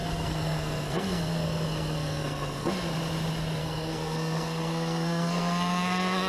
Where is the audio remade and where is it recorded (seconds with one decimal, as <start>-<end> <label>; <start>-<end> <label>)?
0.0-2.7 remade; 2.7-3.6 recorded; 3.6-6.3 remade